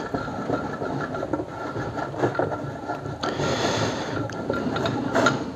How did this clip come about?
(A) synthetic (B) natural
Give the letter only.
A